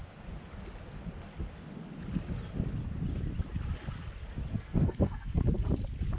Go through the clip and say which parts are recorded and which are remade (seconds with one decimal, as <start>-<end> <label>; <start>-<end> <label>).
0.0-4.5 recorded; 4.5-5.4 remade; 5.4-6.2 recorded